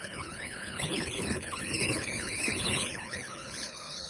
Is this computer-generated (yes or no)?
yes